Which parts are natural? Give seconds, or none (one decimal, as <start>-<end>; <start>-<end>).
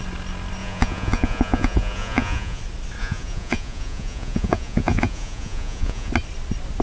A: 0.0-0.6; 2.6-3.0; 6.1-6.8